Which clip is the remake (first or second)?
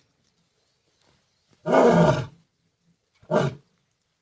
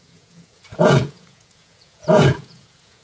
second